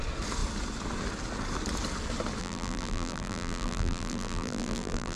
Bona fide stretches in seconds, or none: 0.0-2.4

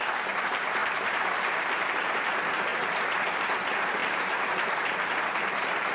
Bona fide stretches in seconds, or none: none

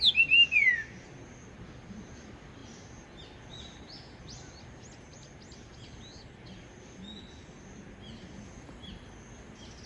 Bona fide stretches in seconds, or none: 0.0-9.9